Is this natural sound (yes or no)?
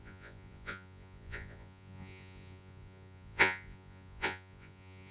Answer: no